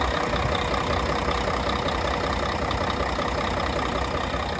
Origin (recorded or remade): recorded